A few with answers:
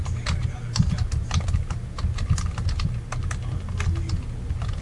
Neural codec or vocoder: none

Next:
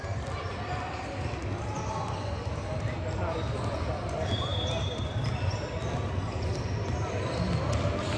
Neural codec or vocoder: none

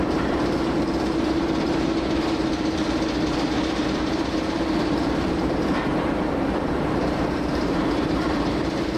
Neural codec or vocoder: vocoder, BigVGAN v2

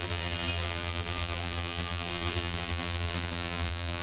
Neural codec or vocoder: vocoder, BigVGAN v2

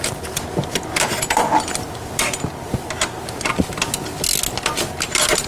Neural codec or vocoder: none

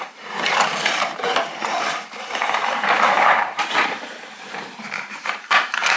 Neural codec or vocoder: vocoder, BigVGAN v2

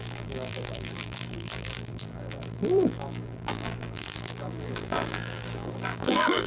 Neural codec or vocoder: vocoder, BigVGAN v2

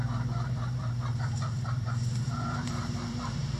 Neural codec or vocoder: vocoder, BigVGAN v2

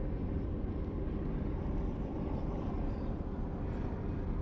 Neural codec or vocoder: vocoder, BigVGAN v2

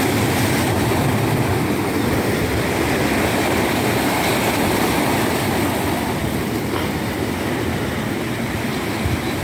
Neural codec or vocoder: none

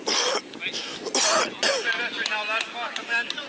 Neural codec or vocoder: none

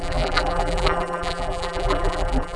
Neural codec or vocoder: vocoder, BigVGAN v2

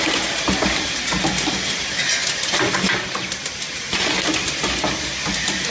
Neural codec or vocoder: none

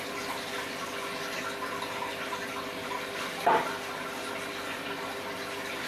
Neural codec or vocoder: none